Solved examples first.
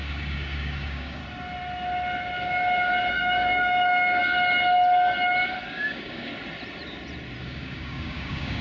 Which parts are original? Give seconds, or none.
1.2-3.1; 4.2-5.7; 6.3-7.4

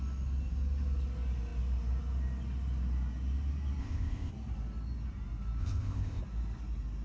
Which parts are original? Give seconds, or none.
0.0-3.8; 4.3-5.6; 6.2-7.0

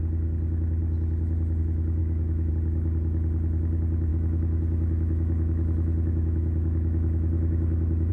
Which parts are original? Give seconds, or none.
0.0-2.0; 2.5-4.1

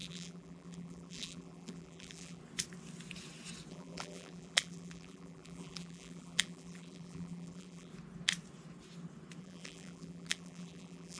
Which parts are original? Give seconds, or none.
2.4-3.7; 7.9-9.4

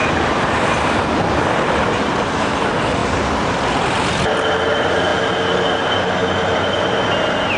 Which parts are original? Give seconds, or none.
1.1-7.6

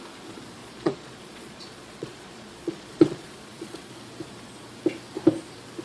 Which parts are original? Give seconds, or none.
0.0-0.6; 3.9-5.8